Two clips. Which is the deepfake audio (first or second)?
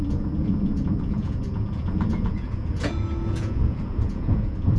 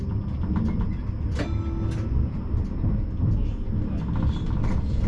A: first